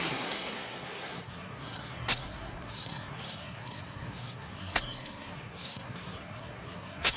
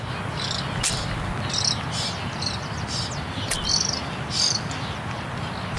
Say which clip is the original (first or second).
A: second